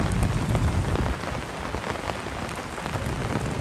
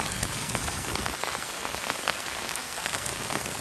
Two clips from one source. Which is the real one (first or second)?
first